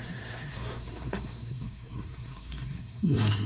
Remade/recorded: remade